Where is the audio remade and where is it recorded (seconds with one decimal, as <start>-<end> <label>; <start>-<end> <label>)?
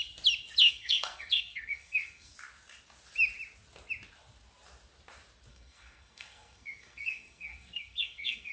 0.0-0.6 recorded; 0.6-2.3 remade; 2.3-5.5 recorded; 5.5-8.5 remade